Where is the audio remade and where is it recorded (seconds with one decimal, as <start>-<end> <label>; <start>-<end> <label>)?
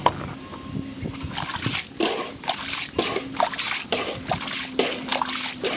0.0-5.8 recorded